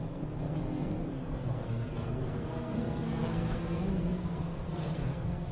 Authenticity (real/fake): fake